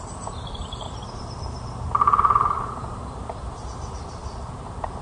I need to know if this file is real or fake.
fake